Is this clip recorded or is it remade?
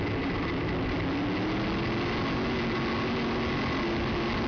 recorded